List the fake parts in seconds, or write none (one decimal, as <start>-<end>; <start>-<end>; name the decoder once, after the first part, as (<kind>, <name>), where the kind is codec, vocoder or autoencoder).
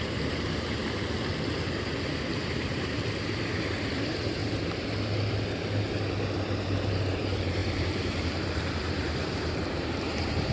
0.0-0.8 (vocoder, BigVGAN v2); 2.4-4.4; 7.1-10.5